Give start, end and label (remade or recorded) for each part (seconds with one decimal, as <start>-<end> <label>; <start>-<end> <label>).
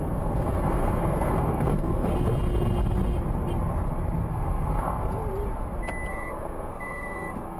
0.0-2.1 remade; 2.1-4.3 recorded; 4.3-5.2 remade; 5.2-6.1 recorded; 6.1-7.6 remade